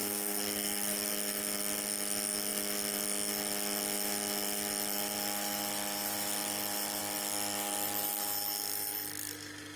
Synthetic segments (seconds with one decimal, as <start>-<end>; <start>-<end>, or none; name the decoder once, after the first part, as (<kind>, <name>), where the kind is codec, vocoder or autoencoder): 0.0-1.1 (codec, SNAC)